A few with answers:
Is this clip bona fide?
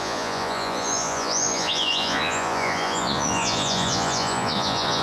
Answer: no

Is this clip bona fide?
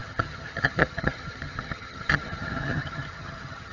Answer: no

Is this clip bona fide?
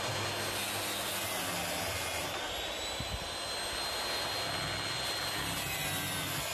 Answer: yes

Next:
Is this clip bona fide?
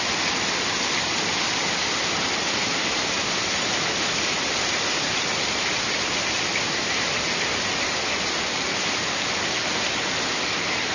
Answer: yes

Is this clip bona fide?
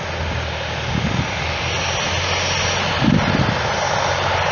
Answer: yes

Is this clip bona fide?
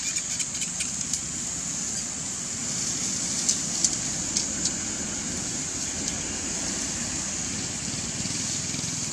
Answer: yes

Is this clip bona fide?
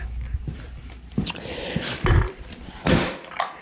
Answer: no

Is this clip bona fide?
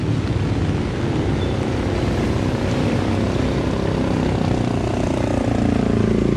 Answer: yes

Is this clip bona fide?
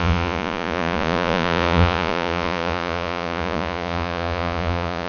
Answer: no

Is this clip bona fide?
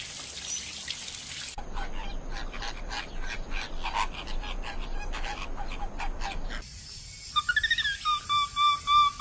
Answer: yes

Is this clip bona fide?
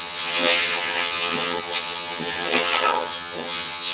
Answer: no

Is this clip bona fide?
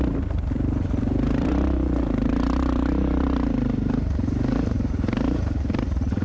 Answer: no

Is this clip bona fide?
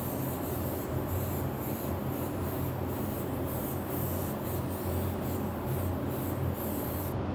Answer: yes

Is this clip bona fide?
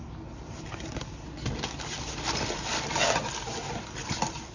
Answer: yes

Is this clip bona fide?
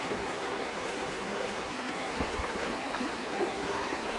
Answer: no